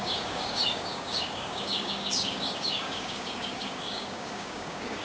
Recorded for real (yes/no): no